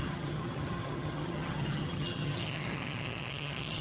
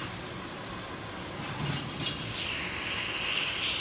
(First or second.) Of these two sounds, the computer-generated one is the first